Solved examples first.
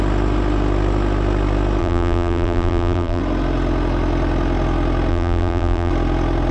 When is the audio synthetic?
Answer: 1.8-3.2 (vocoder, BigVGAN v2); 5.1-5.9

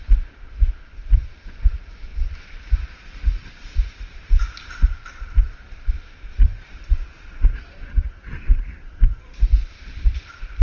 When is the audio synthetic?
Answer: 0.0-10.6 (vocoder, BigVGAN v2)